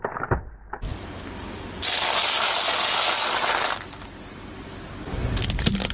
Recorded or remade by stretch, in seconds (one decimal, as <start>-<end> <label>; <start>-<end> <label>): 0.0-5.9 recorded